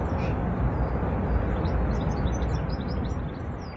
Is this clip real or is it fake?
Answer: real